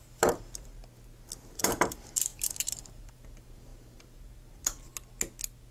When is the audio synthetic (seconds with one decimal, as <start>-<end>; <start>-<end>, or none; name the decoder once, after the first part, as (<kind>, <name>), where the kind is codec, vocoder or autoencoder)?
0.0-0.8 (vocoder, BigVGAN v2); 1.5-4.9